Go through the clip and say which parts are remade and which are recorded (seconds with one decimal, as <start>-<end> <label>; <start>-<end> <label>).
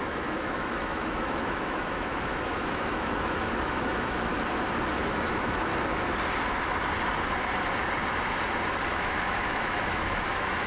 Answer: 0.0-4.3 remade; 4.3-4.9 recorded; 4.9-5.7 remade; 5.7-8.9 recorded; 8.9-10.7 remade